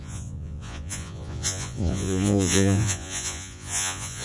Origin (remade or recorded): remade